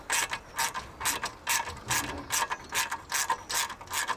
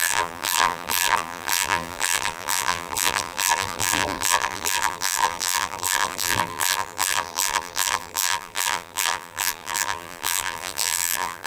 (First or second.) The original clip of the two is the first